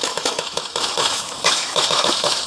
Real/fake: fake